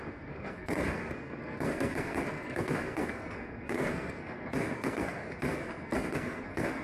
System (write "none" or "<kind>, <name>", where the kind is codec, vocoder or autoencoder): codec, SNAC